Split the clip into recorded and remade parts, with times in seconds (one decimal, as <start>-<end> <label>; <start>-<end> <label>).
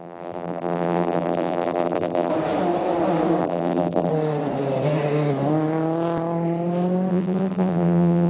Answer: 0.0-2.3 remade; 2.3-3.4 recorded; 3.4-4.1 remade; 4.1-7.1 recorded; 7.1-8.3 remade